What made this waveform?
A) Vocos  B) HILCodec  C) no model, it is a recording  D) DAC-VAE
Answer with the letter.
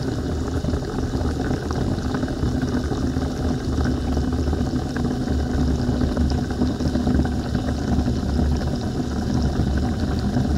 C